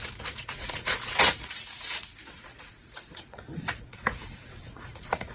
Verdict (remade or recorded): remade